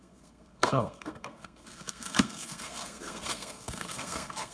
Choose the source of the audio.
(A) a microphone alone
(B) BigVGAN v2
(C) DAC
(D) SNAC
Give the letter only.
D